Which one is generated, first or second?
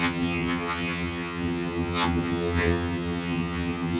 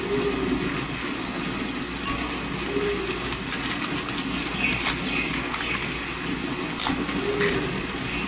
first